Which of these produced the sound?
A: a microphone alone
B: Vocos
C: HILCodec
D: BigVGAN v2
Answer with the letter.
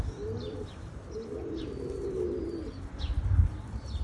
A